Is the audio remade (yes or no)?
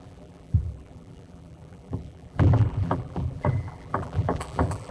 yes